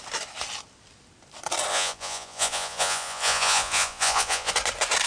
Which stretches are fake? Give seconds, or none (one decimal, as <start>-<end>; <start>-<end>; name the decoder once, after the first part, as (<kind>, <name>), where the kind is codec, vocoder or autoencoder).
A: 1.7-4.5 (vocoder, Vocos)